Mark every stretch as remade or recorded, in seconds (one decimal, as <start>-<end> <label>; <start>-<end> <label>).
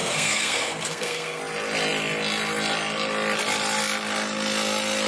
0.0-1.4 remade; 1.4-5.1 recorded